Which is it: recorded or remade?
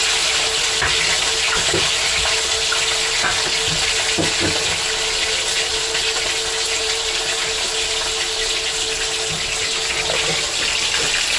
recorded